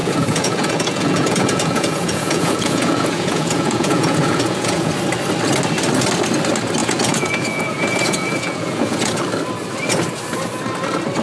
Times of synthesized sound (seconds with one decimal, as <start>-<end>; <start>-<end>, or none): 0.0-4.9; 6.8-9.2